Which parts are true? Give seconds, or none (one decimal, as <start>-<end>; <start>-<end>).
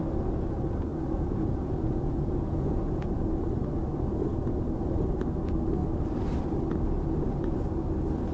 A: 0.0-0.9; 3.3-8.3